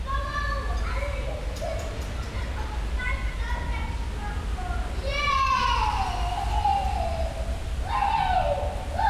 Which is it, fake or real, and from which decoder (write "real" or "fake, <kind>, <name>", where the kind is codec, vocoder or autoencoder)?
real